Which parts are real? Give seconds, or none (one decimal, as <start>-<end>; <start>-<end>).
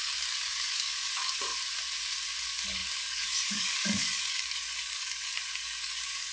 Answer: 1.5-2.4